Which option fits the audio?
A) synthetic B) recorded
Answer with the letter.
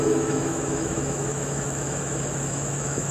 A